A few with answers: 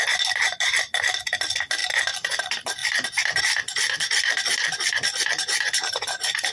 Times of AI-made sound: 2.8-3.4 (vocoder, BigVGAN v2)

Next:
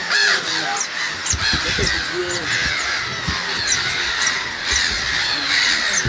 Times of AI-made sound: 0.0-0.5 (vocoder, BigVGAN v2)

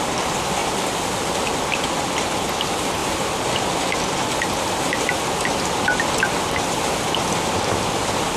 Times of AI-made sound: none

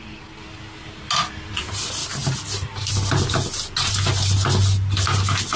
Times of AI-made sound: none

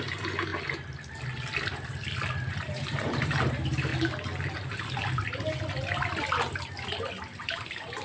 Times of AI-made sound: 0.0-0.5 (vocoder, BigVGAN v2); 2.5-3.9; 7.4-8.0

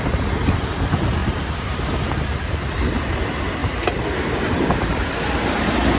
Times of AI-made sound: 1.2-3.2 (vocoder, BigVGAN v2); 3.6-4.7

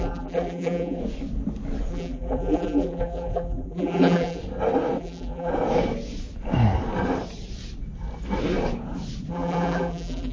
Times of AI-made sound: 0.0-1.0 (vocoder, BigVGAN v2); 1.9-4.4; 5.0-5.5; 9.3-10.3

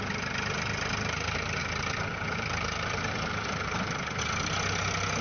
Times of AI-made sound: 1.6-4.2 (vocoder, BigVGAN v2)